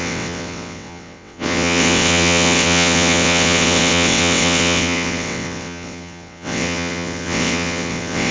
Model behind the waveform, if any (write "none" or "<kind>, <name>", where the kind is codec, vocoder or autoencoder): vocoder, WaveNeXt